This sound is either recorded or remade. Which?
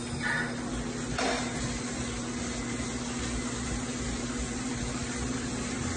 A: recorded